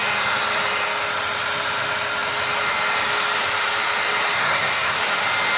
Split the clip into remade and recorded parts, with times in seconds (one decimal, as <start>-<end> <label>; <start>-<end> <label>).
0.0-4.4 recorded; 4.4-5.0 remade; 5.0-5.6 recorded